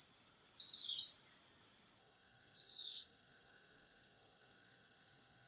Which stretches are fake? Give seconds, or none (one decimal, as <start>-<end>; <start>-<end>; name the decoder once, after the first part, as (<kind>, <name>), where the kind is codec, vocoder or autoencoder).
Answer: 2.0-5.5 (codec, SNAC)